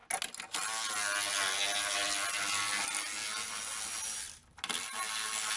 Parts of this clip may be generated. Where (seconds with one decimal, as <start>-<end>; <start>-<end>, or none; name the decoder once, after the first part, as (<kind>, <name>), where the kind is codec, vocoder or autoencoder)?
none